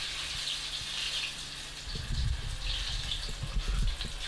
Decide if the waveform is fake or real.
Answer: real